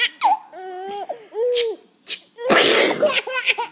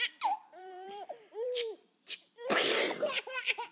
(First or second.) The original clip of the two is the first